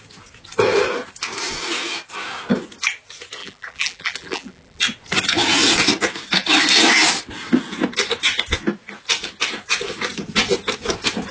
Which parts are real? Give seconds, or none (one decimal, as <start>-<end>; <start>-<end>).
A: 0.0-3.4; 4.8-11.3